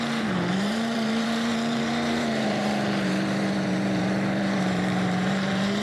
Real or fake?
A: fake